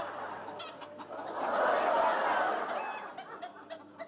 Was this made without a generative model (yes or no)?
yes